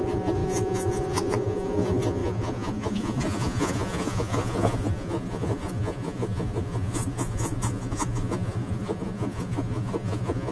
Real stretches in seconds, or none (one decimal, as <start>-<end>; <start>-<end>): none